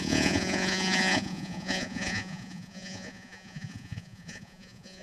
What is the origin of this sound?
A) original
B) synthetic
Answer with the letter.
B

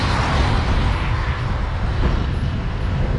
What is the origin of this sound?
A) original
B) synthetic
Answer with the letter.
A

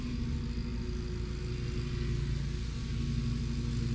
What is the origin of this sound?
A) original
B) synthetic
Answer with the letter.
A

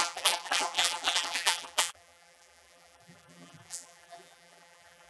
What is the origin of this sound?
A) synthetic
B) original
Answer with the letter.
A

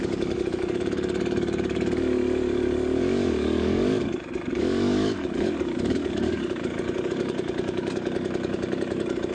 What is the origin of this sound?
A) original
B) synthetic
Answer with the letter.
B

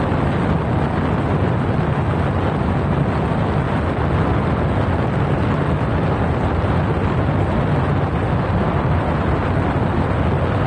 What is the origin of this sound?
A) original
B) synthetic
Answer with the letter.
A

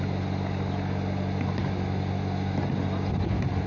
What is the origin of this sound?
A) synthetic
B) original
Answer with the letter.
B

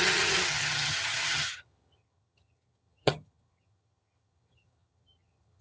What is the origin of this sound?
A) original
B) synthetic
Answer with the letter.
B